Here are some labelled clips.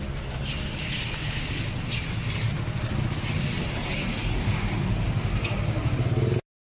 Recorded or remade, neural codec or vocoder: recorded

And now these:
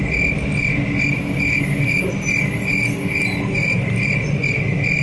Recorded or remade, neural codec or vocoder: recorded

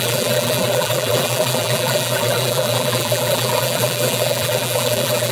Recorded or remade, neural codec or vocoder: remade, vocoder, BigVGAN v2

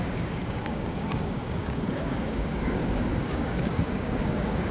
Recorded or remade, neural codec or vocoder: remade, codec, DAC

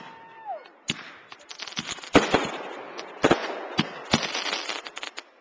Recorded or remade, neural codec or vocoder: recorded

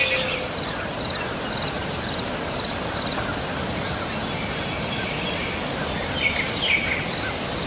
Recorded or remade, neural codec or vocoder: recorded